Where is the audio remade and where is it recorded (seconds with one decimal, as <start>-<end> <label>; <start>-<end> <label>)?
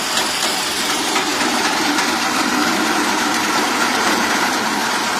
0.0-2.5 remade; 2.5-3.2 recorded; 3.2-5.2 remade